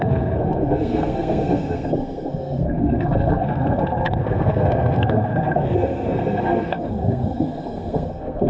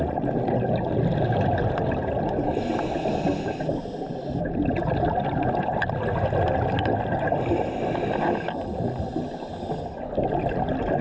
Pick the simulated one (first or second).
first